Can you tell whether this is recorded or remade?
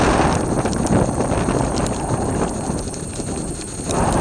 recorded